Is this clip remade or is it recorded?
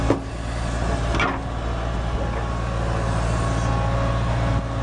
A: recorded